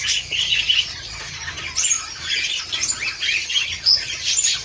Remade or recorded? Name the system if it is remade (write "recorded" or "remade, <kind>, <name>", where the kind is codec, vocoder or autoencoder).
recorded